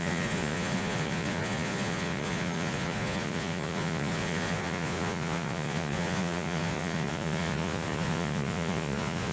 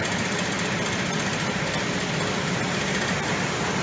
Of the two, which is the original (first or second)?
second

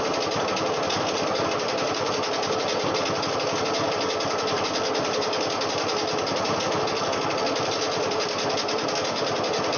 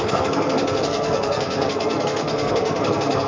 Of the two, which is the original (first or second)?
first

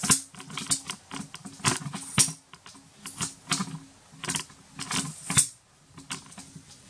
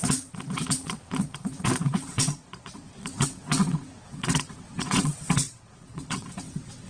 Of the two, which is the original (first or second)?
first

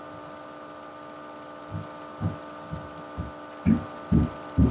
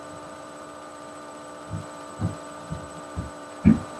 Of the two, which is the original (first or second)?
first